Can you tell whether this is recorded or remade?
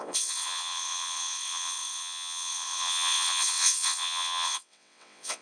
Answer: remade